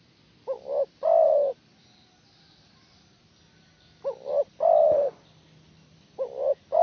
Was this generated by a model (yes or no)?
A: yes